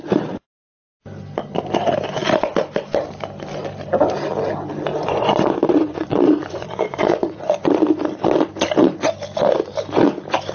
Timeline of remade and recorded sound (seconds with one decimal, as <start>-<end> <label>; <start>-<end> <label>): 0.0-4.9 recorded; 4.9-7.7 remade; 7.7-10.5 recorded